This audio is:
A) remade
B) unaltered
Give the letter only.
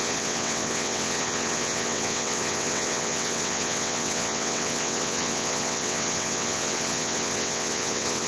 A